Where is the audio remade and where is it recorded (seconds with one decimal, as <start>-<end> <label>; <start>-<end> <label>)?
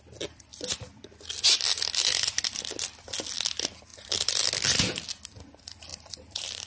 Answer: 0.0-5.9 recorded; 5.9-6.7 remade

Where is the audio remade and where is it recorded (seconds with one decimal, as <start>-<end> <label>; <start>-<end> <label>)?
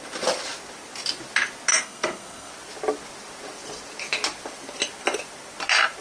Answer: 0.0-1.7 recorded; 1.7-2.5 remade; 2.5-6.0 recorded